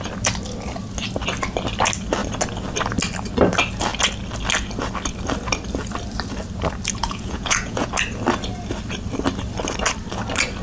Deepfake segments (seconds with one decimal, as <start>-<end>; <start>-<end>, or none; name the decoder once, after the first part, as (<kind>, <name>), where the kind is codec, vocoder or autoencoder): 7.0-7.9 (vocoder, Vocos)